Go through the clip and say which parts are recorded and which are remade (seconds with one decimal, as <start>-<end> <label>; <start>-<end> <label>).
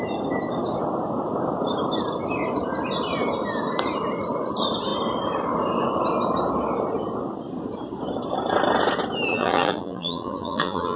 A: 0.0-9.3 recorded; 9.3-11.0 remade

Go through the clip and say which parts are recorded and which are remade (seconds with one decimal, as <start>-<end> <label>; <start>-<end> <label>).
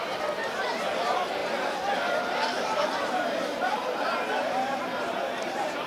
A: 0.0-1.4 remade; 1.4-2.2 recorded; 2.2-5.9 remade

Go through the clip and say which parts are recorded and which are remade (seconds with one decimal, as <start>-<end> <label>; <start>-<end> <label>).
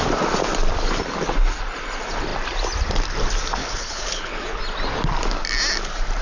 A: 0.0-3.6 recorded; 3.6-4.6 remade; 4.6-6.2 recorded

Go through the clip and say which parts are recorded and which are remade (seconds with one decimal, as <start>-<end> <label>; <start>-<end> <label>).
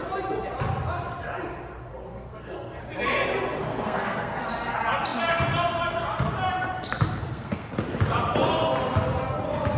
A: 0.0-1.9 recorded; 1.9-2.8 remade; 2.8-3.7 recorded; 3.7-4.5 remade; 4.5-7.2 recorded; 7.2-7.7 remade; 7.7-9.8 recorded